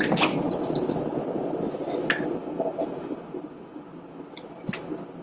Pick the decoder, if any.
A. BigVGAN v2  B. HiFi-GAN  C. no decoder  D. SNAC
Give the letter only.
C